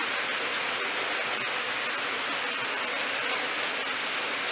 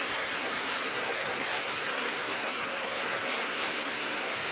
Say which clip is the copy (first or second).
second